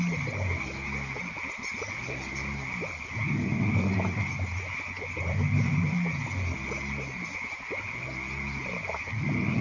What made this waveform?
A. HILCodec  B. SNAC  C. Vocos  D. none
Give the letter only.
D